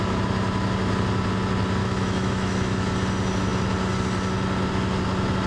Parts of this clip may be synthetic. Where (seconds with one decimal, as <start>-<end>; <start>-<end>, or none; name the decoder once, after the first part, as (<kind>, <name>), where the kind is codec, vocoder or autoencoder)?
1.8-2.9 (autoencoder, DAC-VAE)